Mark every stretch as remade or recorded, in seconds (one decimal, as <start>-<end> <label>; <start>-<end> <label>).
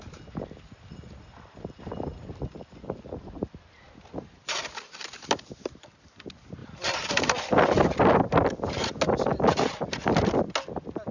0.0-11.1 recorded